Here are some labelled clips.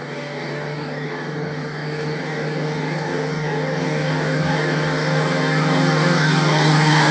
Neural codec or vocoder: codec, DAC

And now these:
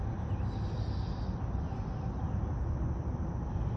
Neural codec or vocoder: none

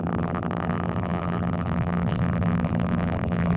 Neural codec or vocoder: vocoder, BigVGAN v2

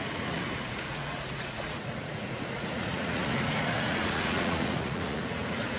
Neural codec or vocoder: vocoder, Vocos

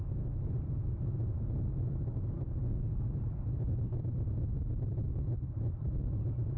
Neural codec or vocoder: vocoder, BigVGAN v2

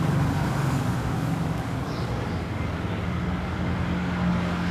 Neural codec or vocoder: codec, DAC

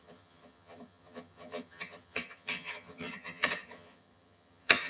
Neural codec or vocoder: vocoder, HiFi-GAN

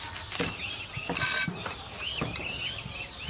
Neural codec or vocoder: none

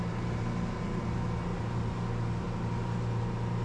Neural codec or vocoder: none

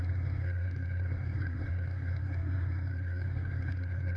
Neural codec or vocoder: codec, SNAC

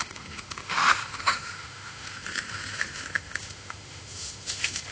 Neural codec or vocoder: autoencoder, DAC-VAE